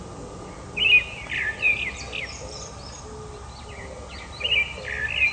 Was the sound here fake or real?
real